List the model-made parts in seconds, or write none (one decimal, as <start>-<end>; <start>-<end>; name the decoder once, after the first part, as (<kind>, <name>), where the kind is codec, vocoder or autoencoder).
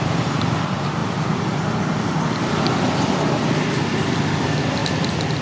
none